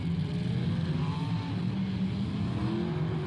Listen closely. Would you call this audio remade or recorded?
recorded